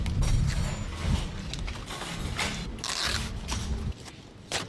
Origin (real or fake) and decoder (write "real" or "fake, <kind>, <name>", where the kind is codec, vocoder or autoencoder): real